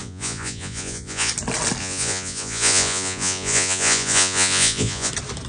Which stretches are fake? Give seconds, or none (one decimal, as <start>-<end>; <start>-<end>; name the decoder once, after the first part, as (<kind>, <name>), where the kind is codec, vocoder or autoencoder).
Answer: 0.0-1.3 (vocoder, Vocos); 1.8-5.1